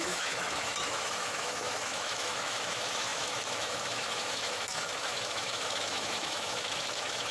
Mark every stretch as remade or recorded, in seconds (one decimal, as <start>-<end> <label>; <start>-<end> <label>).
0.0-7.3 remade